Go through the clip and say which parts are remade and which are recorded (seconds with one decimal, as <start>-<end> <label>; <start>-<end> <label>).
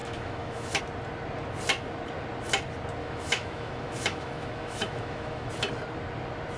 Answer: 0.0-0.8 remade; 0.8-3.0 recorded; 3.0-5.5 remade; 5.5-6.6 recorded